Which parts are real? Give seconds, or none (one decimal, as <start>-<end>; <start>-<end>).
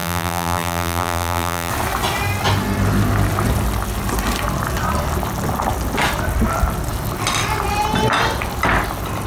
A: 1.7-9.3